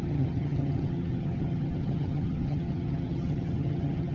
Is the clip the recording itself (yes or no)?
no